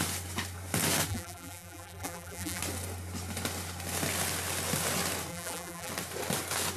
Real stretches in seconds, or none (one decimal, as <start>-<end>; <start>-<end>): 0.0-1.1; 2.6-5.3; 5.9-6.8